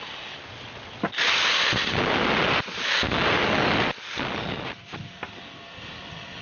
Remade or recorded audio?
recorded